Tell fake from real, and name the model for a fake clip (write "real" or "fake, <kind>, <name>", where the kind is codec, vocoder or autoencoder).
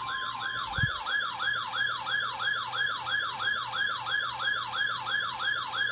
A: fake, vocoder, BigVGAN v2